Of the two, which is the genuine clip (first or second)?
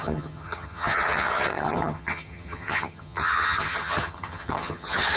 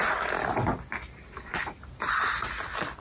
second